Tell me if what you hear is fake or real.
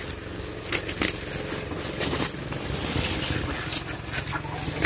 real